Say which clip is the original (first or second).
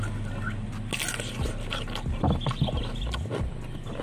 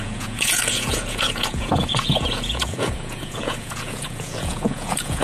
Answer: first